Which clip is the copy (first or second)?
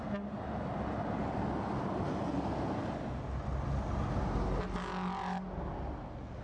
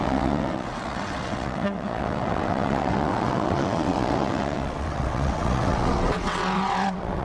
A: second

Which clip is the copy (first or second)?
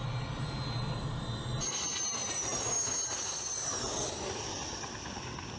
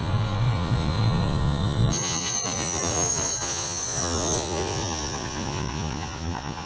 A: second